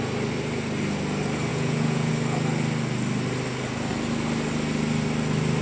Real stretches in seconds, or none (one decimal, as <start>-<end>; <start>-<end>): 0.0-1.5; 2.1-5.6